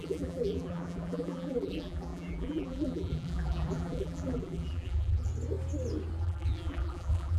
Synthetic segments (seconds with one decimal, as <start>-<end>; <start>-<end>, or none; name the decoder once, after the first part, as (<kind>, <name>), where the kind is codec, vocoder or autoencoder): 0.0-5.3 (vocoder, BigVGAN v2); 6.2-7.4